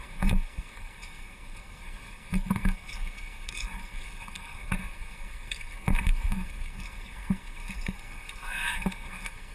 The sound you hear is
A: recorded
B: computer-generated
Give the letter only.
B